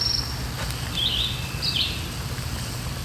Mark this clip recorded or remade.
recorded